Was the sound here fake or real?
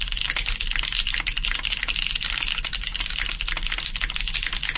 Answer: real